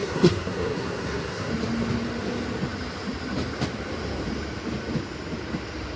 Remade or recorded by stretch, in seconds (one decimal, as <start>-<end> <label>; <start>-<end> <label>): 0.0-1.5 remade; 1.5-6.0 recorded